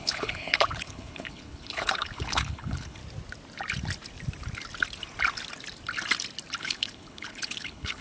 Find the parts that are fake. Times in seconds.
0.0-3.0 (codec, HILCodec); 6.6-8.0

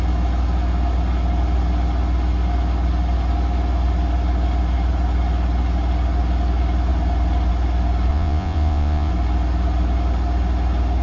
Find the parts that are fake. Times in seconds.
8.1-9.1 (vocoder, Vocos)

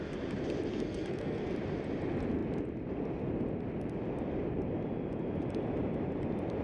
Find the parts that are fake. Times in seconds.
0.7-1.5 (codec, SNAC)

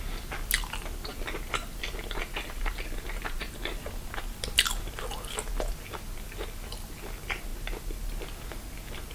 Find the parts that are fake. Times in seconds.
1.1-4.8 (vocoder, BigVGAN v2)

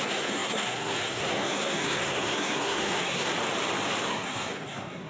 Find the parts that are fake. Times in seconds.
0.0-3.3 (codec, SNAC); 4.1-5.1

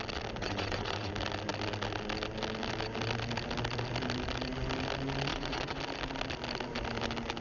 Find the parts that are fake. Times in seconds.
0.4-1.1 (vocoder, WaveNeXt); 5.3-5.8